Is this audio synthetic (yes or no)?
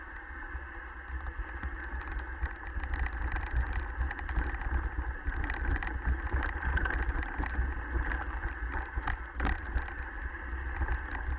no